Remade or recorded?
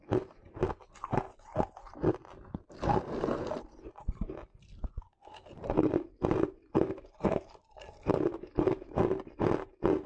recorded